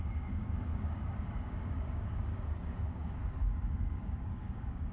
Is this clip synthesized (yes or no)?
yes